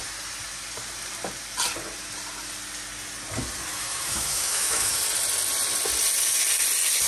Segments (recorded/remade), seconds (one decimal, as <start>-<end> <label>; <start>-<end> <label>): 0.0-3.7 recorded; 3.7-5.0 remade; 5.0-7.1 recorded